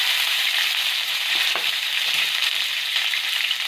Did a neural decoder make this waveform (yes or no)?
yes